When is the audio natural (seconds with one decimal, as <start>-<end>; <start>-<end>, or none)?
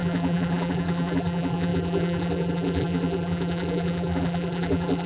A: none